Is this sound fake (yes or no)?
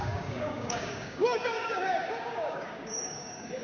yes